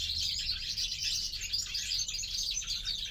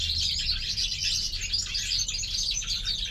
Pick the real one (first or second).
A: second